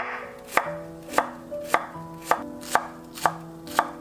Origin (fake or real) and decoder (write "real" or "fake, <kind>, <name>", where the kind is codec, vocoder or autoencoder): real